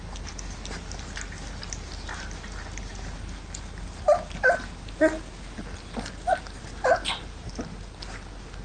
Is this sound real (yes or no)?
yes